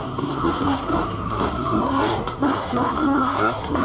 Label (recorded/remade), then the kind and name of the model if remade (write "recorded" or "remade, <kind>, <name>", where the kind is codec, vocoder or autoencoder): remade, codec, SNAC